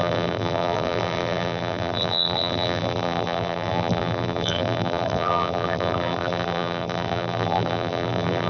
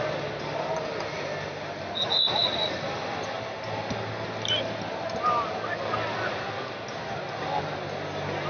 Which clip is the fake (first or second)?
first